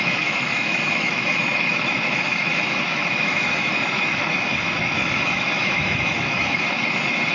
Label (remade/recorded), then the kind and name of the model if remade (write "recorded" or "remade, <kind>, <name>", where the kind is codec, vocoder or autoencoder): remade, autoencoder, DAC-VAE